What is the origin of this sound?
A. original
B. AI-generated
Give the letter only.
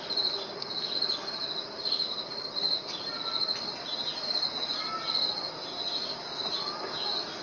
A